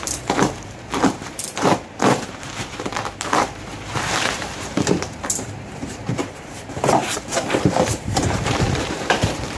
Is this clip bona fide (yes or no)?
no